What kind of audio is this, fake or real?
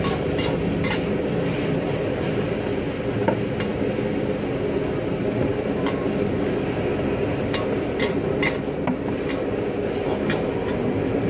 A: real